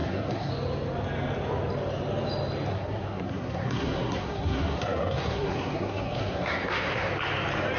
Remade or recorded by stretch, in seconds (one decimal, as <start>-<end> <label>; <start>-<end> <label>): 0.0-0.5 remade; 0.5-2.7 recorded; 2.7-7.1 remade; 7.1-7.8 recorded